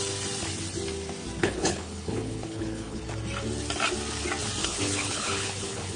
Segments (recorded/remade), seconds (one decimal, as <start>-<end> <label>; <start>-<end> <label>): 0.0-1.4 recorded; 1.4-3.0 remade; 3.0-4.6 recorded; 4.6-6.0 remade